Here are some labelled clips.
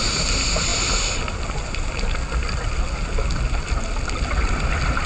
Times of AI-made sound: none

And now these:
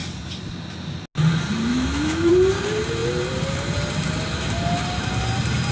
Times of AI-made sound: 1.7-2.3 (autoencoder, DAC-VAE)

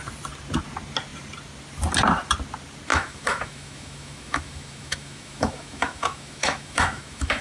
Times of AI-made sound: 2.9-7.4 (autoencoder, DAC-VAE)

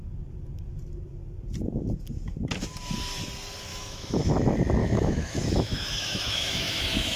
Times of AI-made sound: 3.7-4.3 (autoencoder, DAC-VAE); 4.8-7.2

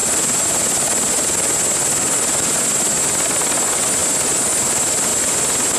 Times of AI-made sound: none

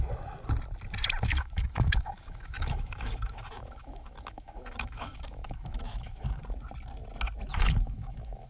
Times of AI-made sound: 1.3-6.4 (autoencoder, DAC-VAE); 7.5-8.5

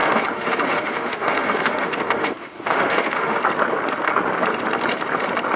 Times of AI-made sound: 0.0-3.4 (autoencoder, DAC-VAE)

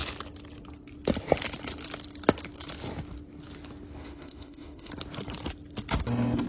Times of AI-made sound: 4.0-4.9 (autoencoder, DAC-VAE)